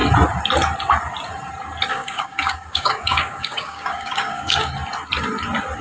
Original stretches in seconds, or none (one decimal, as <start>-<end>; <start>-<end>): 0.0-1.9; 4.7-5.8